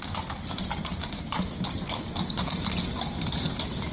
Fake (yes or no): no